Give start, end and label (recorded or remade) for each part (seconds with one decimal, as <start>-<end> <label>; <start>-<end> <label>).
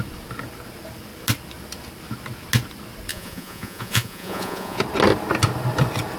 0.0-3.1 recorded; 3.1-4.8 remade; 4.8-6.2 recorded